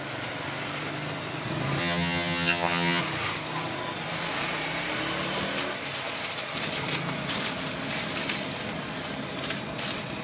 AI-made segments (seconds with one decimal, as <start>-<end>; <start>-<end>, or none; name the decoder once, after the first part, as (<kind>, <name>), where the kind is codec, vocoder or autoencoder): 1.8-3.0 (vocoder, HiFi-GAN)